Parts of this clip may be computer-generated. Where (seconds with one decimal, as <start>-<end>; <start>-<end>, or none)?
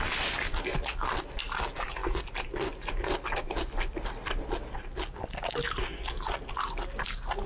none